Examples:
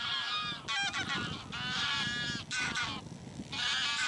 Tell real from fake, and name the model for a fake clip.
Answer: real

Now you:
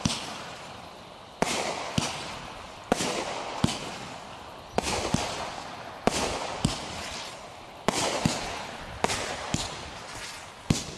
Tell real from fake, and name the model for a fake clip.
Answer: real